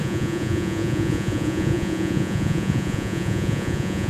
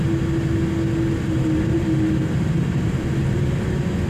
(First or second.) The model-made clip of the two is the first